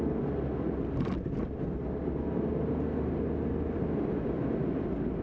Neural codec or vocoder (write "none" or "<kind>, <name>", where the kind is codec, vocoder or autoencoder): none